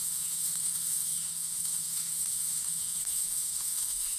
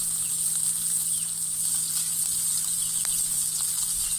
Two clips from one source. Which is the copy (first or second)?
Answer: first